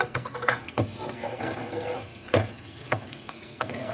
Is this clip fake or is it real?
fake